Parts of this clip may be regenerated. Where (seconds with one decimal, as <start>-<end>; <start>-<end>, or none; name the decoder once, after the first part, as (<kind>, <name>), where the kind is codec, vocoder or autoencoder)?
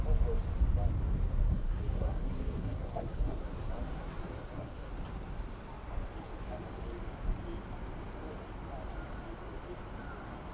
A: 1.4-4.9 (codec, SNAC)